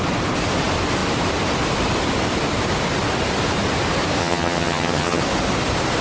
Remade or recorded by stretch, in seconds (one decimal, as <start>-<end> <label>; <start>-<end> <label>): 0.0-4.2 recorded; 4.2-5.2 remade; 5.2-6.0 recorded